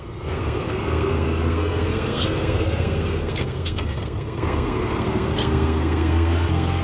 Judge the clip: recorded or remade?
remade